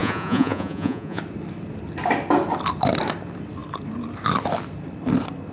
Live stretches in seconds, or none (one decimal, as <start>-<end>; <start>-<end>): 1.2-5.5